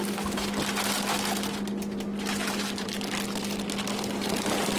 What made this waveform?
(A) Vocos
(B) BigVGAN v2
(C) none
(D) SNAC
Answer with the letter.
C